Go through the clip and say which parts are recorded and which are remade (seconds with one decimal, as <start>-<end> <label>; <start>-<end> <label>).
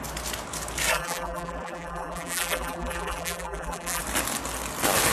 0.0-0.9 recorded; 0.9-4.0 remade; 4.0-5.1 recorded